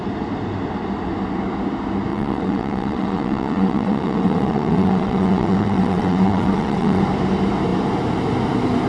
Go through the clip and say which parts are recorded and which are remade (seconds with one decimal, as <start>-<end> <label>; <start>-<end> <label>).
0.0-2.1 recorded; 2.1-7.0 remade; 7.0-8.9 recorded